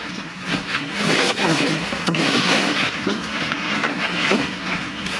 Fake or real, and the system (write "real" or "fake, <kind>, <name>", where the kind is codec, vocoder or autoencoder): fake, codec, SNAC